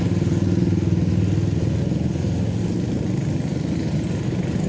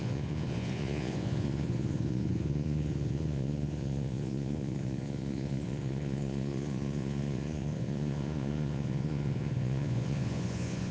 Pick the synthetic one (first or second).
second